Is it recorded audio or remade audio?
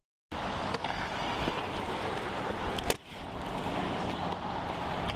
recorded